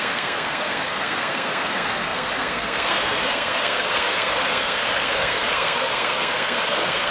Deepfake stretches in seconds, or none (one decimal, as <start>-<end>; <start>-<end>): 0.0-7.1